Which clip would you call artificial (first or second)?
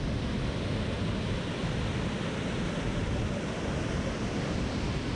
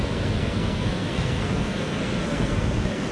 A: second